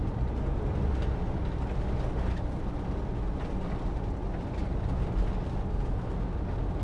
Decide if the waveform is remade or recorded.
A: recorded